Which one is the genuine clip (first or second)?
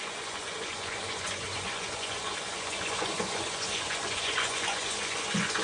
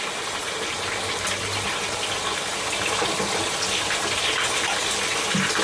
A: second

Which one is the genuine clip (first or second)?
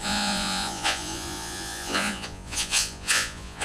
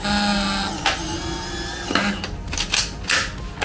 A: second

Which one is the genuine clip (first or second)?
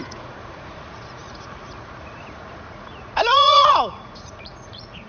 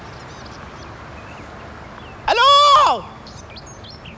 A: second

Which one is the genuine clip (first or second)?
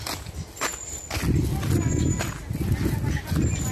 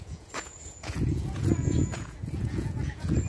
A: first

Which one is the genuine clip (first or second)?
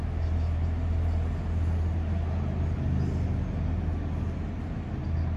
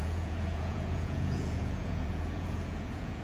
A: first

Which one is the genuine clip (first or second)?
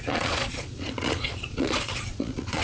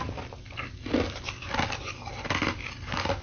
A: second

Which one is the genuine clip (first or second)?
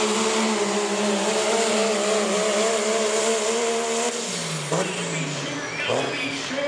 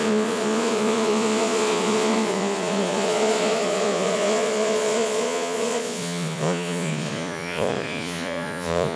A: first